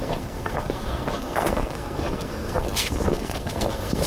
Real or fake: fake